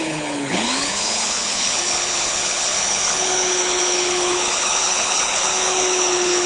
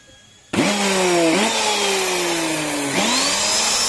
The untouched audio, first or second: second